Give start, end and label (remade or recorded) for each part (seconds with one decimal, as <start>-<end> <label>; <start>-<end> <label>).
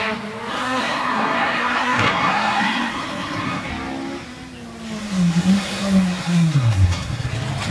0.0-0.5 recorded; 0.5-3.7 remade; 3.7-5.0 recorded; 5.0-7.3 remade; 7.3-7.7 recorded